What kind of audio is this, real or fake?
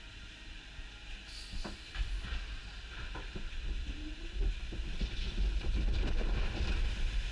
real